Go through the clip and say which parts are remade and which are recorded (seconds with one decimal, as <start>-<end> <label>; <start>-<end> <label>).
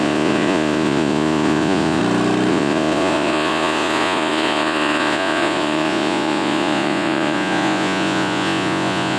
0.0-2.0 remade; 2.0-2.5 recorded; 2.5-9.2 remade